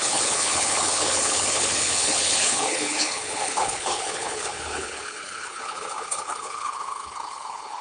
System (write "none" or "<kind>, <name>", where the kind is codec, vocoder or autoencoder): codec, HILCodec